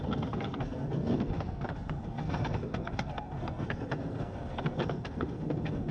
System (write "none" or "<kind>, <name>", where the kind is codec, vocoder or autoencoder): codec, SNAC